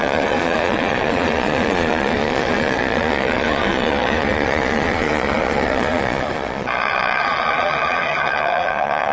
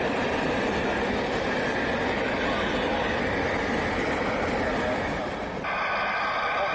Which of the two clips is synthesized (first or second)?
first